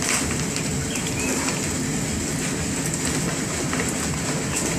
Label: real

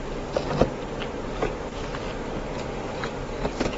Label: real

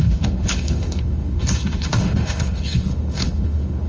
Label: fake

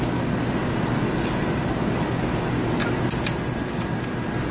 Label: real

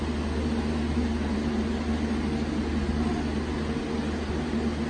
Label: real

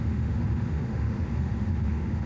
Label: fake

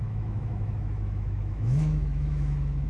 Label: fake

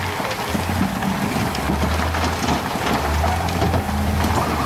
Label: real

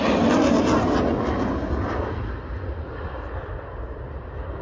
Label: real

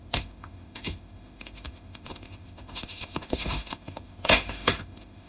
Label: fake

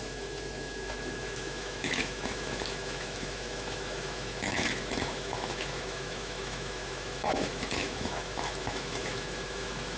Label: fake